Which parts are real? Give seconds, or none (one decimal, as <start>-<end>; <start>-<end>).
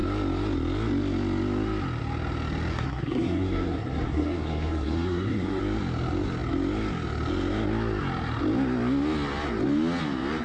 0.0-2.7; 5.6-10.4